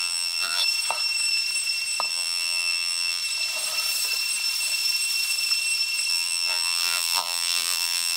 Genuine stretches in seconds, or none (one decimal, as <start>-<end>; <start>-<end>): 0.6-2.1; 3.2-6.1